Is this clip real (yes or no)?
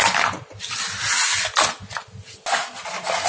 yes